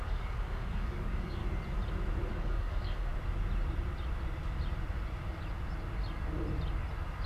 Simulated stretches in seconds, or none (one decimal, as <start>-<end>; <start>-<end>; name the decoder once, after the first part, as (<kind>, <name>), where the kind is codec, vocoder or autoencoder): 0.0-1.4 (codec, DAC); 2.3-3.1